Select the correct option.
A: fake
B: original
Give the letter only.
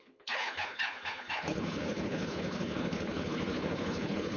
A